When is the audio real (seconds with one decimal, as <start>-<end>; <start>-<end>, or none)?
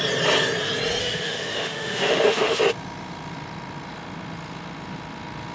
0.0-1.0; 2.6-5.5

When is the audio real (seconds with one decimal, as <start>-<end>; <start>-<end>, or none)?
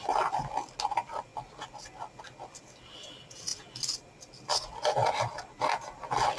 0.0-6.4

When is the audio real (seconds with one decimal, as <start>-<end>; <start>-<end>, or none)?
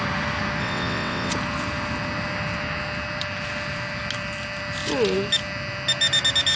0.0-0.6; 1.3-6.6